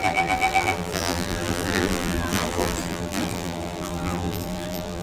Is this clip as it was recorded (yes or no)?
no